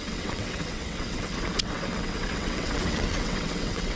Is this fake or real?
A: fake